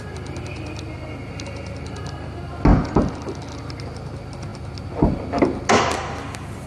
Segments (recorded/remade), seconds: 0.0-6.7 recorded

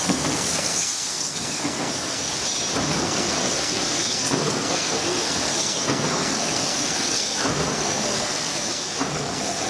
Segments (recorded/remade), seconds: 0.0-2.3 remade; 2.3-2.9 recorded; 2.9-9.7 remade

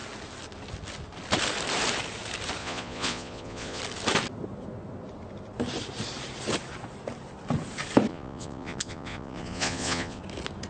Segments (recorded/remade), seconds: 0.0-2.6 recorded; 2.6-3.8 remade; 3.8-8.1 recorded; 8.1-10.2 remade; 10.2-10.7 recorded

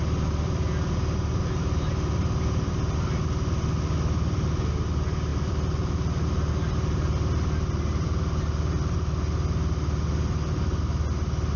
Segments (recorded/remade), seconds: 0.0-11.6 recorded

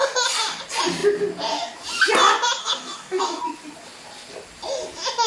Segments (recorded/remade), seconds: 0.0-2.6 recorded; 2.6-3.4 remade; 3.4-5.3 recorded

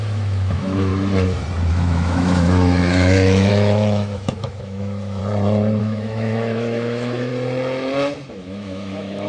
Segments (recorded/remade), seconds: 0.0-0.9 remade; 0.9-1.7 recorded; 1.7-5.2 remade; 5.2-5.8 recorded; 5.8-7.3 remade; 7.3-8.3 recorded; 8.3-9.3 remade

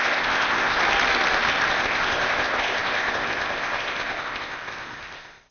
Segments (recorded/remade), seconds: 0.0-0.8 remade; 0.8-1.7 recorded; 1.7-5.5 remade